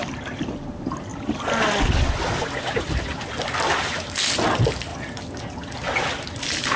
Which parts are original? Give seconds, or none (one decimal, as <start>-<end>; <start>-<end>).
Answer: 0.0-1.1; 3.2-6.8